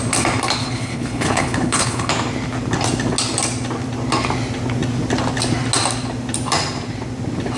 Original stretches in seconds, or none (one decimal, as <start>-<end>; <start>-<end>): 0.0-0.6; 2.1-7.6